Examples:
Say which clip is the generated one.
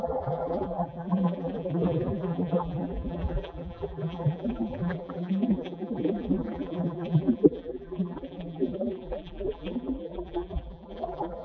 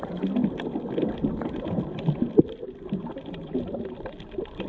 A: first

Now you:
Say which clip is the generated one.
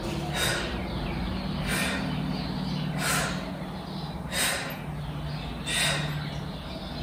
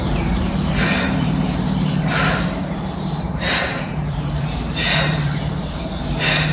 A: second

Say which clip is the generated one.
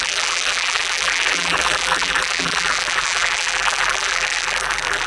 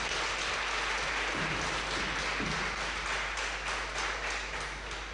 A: first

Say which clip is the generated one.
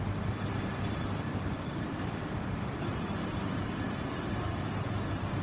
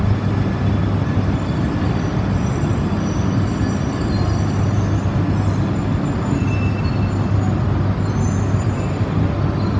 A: first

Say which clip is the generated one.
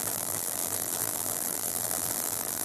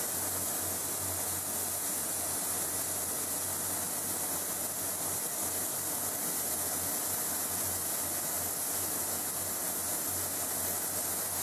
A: first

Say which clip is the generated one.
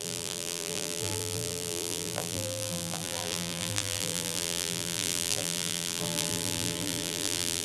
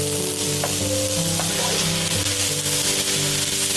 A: first